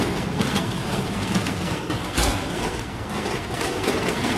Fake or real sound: fake